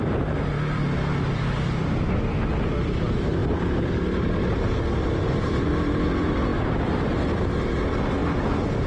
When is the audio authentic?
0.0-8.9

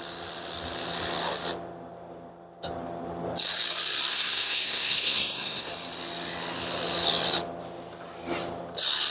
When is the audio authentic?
0.0-4.1; 5.7-9.1

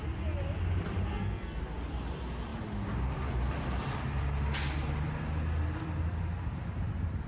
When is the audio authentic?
0.0-1.1; 1.6-7.3

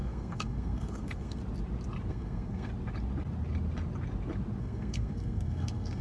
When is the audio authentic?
1.4-2.1; 2.7-4.6